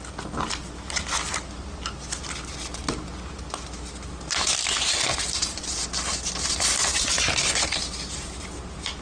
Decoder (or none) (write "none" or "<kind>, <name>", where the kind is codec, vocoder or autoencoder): none